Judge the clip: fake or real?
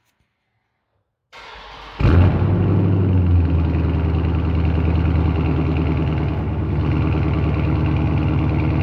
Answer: real